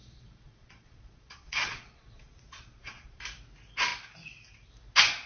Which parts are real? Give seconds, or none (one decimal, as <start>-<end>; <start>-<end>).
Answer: 3.2-5.3